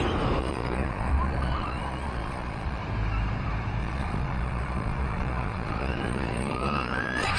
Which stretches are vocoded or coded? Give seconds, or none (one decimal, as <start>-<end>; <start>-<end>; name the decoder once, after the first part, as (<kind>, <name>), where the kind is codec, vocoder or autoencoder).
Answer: 0.4-2.8 (vocoder, Vocos); 3.8-7.4